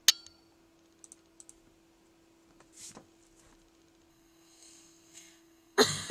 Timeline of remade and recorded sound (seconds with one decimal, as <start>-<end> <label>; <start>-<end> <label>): 0.0-4.1 recorded; 4.1-6.1 remade